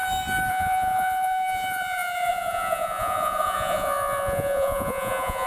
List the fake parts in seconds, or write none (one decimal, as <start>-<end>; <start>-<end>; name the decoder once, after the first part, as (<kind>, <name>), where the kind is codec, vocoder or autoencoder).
0.5-5.5 (vocoder, Vocos)